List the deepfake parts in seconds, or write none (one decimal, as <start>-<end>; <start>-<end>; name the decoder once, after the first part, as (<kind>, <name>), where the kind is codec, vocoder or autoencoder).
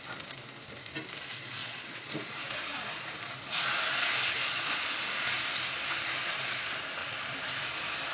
1.6-2.3 (vocoder, Vocos); 4.4-5.0